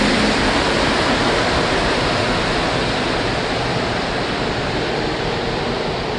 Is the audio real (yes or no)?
yes